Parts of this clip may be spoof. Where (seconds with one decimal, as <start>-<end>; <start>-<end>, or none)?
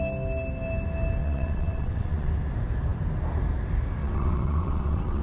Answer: 1.2-2.3; 4.0-5.2